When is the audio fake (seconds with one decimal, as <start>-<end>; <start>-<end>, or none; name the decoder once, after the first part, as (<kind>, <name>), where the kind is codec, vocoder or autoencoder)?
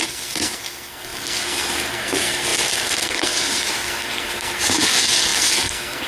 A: 0.0-6.1 (codec, SNAC)